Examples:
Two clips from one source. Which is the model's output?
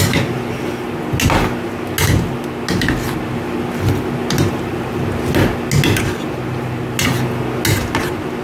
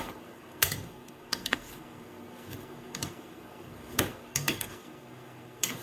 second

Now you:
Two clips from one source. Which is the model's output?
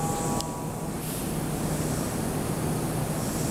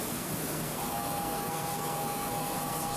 second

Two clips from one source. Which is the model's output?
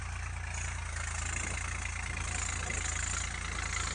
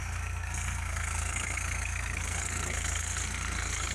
second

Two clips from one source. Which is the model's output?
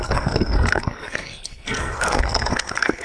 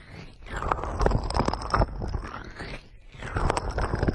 first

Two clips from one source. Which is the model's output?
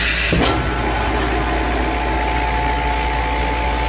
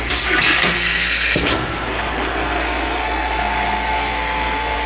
second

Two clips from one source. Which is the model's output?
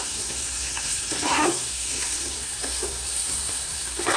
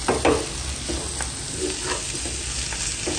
first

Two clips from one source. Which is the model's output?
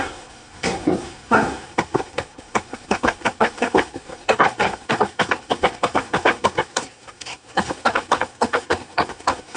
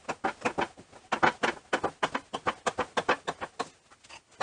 first